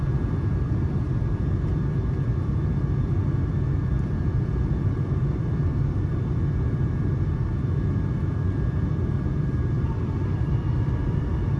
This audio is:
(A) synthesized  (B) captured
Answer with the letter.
A